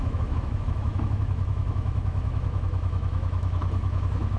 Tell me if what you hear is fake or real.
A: fake